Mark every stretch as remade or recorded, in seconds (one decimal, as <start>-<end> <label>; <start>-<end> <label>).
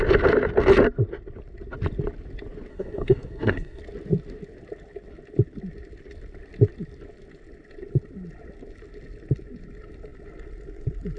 0.0-2.7 recorded; 2.7-3.8 remade; 3.8-11.2 recorded